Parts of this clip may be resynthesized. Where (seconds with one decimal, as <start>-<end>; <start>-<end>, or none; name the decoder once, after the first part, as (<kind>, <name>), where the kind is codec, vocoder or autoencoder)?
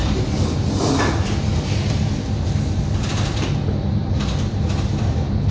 none